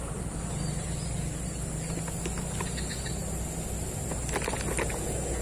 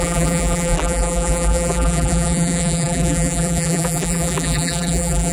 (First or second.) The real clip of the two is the first